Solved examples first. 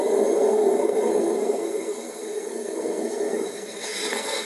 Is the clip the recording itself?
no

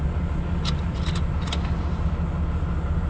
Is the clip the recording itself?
yes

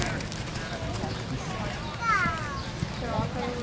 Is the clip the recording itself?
yes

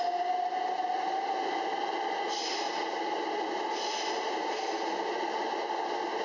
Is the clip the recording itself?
yes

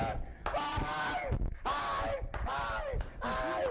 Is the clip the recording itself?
yes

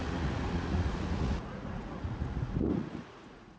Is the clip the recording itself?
no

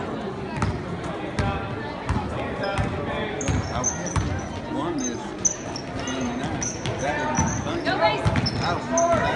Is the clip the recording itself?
yes